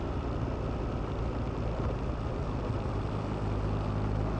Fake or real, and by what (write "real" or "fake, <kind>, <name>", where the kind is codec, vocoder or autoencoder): real